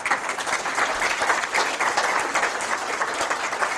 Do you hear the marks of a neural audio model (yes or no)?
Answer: no